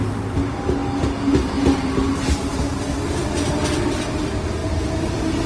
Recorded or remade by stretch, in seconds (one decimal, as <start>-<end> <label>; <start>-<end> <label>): 0.0-5.5 recorded